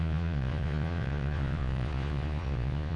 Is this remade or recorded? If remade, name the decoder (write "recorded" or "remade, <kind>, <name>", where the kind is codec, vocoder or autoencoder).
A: remade, vocoder, Vocos